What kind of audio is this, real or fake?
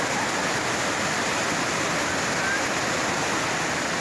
real